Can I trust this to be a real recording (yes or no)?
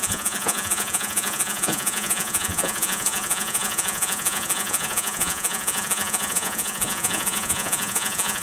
no